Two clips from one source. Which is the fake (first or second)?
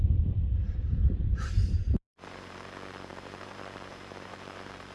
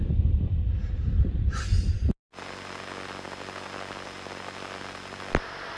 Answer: first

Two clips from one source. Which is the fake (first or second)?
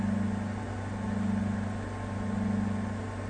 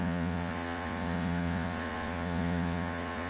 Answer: second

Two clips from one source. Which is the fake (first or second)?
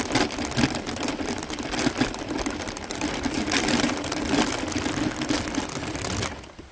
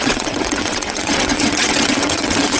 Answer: second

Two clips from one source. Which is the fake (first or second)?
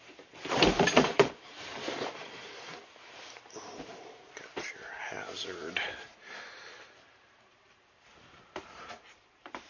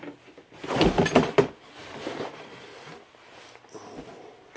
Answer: first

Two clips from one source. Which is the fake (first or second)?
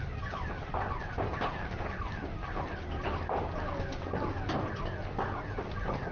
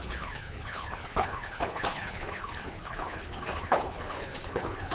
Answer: second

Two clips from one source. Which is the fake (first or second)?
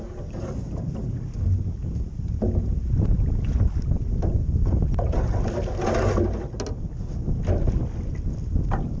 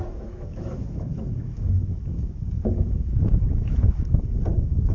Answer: second